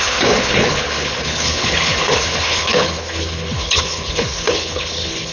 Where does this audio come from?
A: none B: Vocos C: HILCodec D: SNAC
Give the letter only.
C